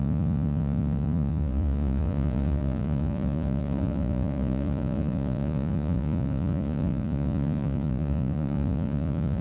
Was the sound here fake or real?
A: fake